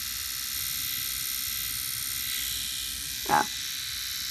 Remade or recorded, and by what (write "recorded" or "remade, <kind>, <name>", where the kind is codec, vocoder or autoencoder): recorded